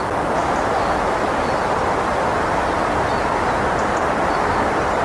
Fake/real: real